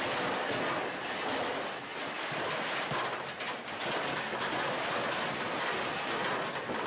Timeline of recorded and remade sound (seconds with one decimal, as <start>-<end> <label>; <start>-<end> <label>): 0.0-1.9 recorded; 1.9-5.6 remade; 5.6-6.9 recorded